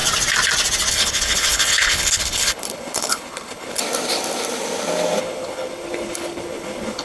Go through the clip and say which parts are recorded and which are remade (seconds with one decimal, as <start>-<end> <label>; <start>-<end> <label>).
0.0-0.9 recorded; 0.9-3.8 remade; 3.8-5.2 recorded; 5.2-7.0 remade

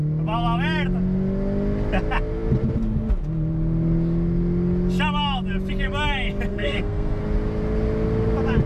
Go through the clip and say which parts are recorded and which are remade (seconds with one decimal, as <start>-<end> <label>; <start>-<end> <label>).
0.0-6.5 recorded; 6.5-7.2 remade; 7.2-8.7 recorded